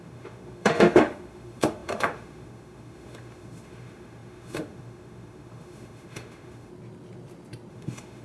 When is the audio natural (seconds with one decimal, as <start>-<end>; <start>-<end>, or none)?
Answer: 6.7-7.7